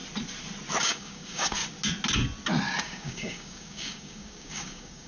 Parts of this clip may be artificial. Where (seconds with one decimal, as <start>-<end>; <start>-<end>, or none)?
0.8-1.6; 2.8-5.1